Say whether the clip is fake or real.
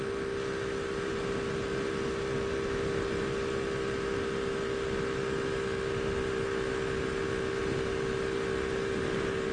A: real